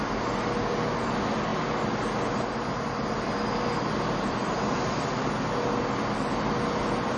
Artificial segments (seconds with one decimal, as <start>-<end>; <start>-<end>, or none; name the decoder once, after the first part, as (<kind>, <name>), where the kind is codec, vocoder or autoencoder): none